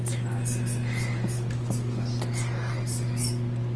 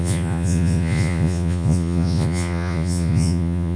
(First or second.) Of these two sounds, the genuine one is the first